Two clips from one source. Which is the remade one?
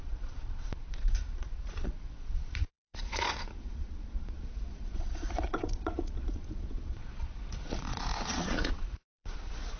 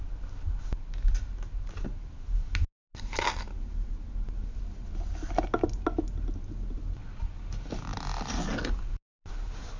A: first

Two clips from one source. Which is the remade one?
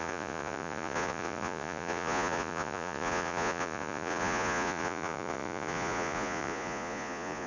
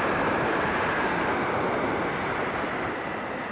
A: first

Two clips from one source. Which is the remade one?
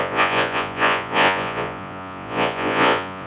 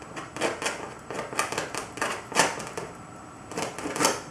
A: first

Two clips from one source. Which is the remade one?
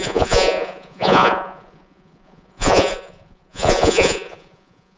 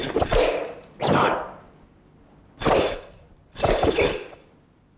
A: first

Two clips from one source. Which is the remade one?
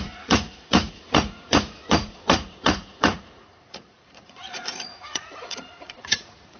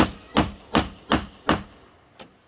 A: first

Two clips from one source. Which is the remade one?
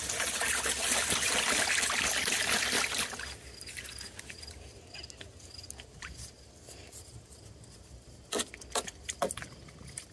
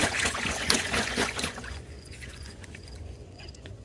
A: second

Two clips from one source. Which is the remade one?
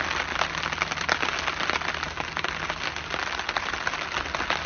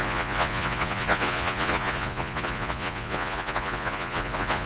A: second